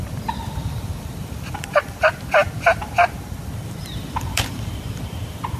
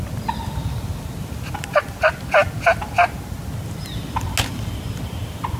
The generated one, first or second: first